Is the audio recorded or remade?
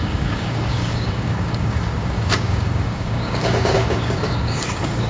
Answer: remade